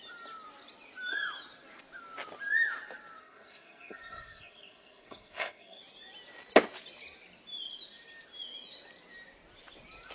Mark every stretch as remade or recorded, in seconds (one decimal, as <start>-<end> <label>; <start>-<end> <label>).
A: 0.0-3.2 recorded; 3.2-5.8 remade; 5.8-10.1 recorded